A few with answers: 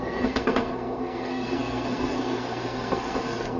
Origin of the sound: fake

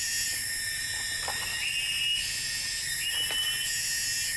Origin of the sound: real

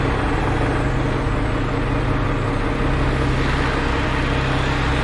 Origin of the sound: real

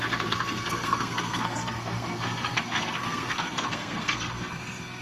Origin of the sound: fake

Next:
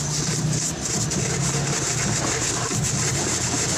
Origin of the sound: real